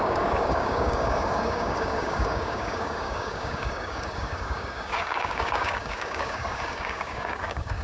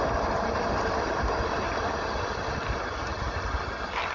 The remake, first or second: first